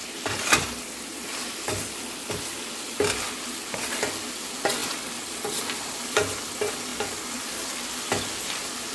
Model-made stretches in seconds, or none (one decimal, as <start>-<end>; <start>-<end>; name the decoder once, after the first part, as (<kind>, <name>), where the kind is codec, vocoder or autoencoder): 0.0-1.8 (vocoder, BigVGAN v2); 4.8-5.6